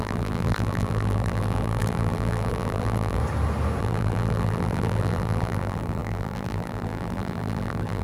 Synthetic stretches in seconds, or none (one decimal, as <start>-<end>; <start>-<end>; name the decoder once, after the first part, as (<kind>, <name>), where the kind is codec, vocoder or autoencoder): 0.0-3.2 (vocoder, BigVGAN v2); 3.8-8.0